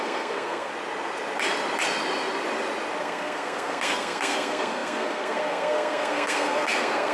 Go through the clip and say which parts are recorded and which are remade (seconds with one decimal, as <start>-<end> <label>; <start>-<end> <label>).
0.0-0.7 remade; 0.7-3.0 recorded; 3.0-7.1 remade